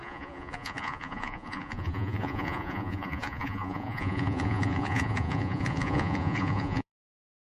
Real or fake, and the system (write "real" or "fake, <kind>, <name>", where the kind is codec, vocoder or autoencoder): fake, vocoder, Vocos